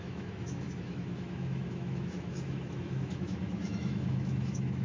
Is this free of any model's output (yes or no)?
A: no